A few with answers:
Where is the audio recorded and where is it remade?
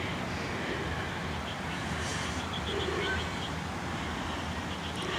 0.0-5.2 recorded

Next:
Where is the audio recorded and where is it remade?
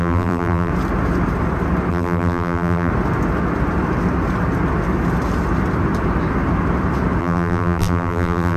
0.0-0.7 remade; 0.7-1.9 recorded; 1.9-2.9 remade; 2.9-7.2 recorded; 7.2-8.6 remade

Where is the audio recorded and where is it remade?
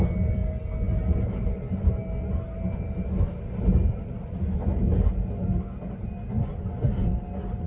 0.0-7.7 recorded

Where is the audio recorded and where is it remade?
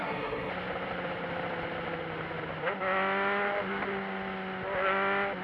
0.0-0.5 remade; 0.5-5.4 recorded